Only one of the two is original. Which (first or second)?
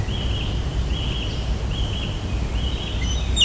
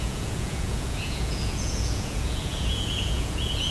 first